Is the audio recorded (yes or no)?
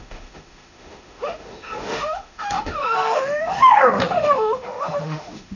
no